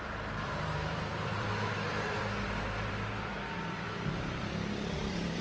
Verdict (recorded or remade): remade